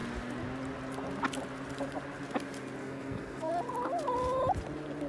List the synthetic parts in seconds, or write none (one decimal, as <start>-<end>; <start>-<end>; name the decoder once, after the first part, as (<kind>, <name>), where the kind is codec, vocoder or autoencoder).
2.8-3.5 (codec, SNAC)